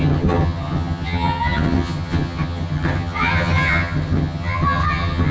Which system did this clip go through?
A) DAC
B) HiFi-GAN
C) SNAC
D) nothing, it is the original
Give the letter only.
B